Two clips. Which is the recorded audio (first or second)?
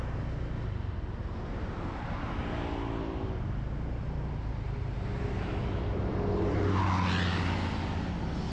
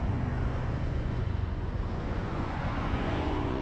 first